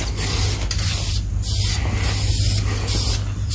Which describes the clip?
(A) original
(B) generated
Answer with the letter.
A